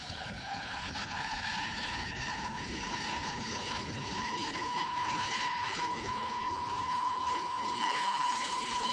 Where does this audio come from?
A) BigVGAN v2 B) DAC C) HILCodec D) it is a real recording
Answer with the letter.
C